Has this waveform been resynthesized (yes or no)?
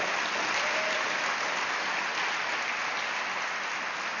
no